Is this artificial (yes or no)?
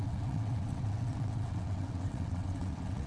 yes